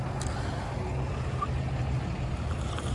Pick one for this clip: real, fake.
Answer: real